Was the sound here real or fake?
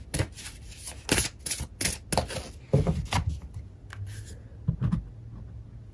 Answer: real